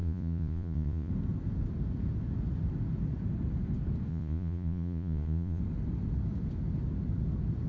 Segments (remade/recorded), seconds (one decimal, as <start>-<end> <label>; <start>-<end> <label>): 0.0-1.1 remade; 1.1-4.1 recorded; 4.1-5.6 remade; 5.6-7.7 recorded